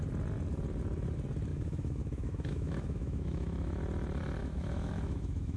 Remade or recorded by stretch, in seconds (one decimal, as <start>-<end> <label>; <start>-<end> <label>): 0.0-1.5 recorded; 1.5-3.8 remade; 3.8-4.4 recorded; 4.4-5.6 remade